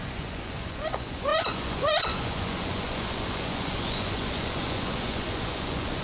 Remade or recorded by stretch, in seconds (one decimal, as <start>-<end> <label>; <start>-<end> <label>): 0.0-6.0 remade